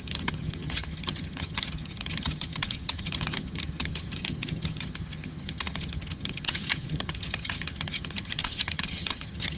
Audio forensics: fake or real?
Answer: fake